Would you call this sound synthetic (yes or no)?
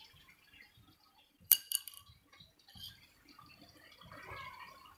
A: yes